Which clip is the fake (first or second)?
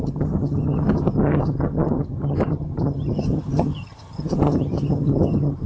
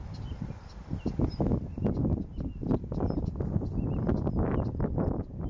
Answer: first